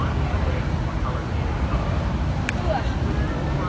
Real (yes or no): yes